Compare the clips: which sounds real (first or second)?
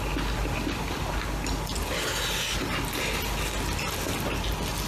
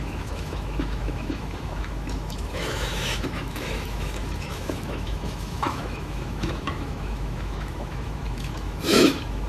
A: first